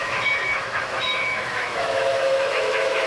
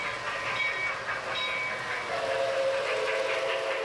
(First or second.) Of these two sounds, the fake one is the first